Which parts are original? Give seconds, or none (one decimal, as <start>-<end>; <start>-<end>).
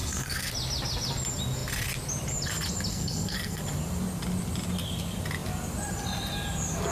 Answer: 0.5-2.9; 3.6-6.9